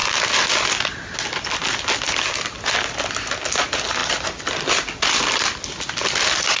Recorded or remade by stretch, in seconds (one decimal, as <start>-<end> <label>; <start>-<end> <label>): 0.0-6.6 recorded

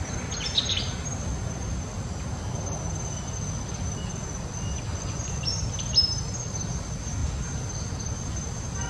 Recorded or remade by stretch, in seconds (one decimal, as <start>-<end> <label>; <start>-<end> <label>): 0.0-4.9 recorded; 4.9-5.4 remade; 5.4-8.9 recorded

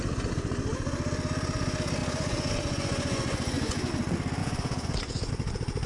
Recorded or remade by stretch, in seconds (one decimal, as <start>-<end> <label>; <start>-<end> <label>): 0.0-2.0 recorded; 2.0-3.9 remade; 3.9-4.4 recorded; 4.4-5.3 remade; 5.3-5.9 recorded

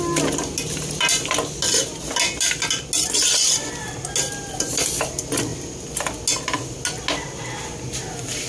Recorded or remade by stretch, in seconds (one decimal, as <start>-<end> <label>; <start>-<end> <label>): 0.0-8.5 recorded

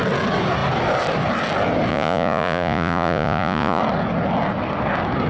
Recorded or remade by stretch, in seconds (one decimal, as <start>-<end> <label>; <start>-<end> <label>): 0.0-1.9 recorded; 1.9-3.8 remade; 3.8-5.3 recorded

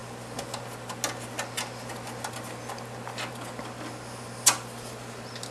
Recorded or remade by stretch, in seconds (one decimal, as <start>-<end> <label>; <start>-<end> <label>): 0.0-5.5 recorded

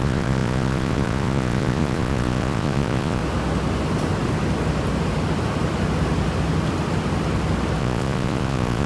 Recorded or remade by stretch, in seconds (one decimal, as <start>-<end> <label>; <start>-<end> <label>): 0.0-3.2 remade; 3.2-7.8 recorded; 7.8-8.9 remade

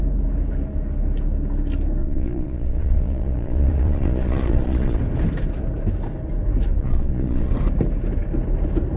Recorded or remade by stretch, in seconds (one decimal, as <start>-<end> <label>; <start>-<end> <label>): 0.0-2.0 recorded; 2.0-5.0 remade; 5.0-6.7 recorded; 6.7-7.5 remade; 7.5-9.0 recorded